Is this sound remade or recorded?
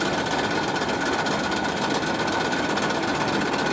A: recorded